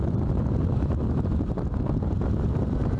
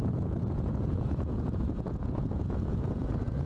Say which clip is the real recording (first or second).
first